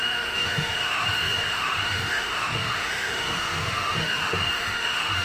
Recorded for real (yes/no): no